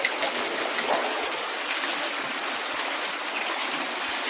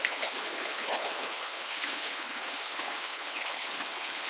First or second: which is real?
first